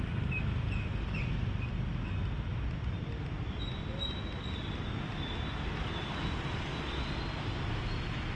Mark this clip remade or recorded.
recorded